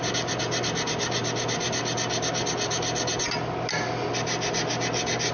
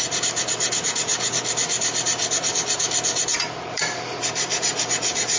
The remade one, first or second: second